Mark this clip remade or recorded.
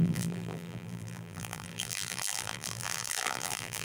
remade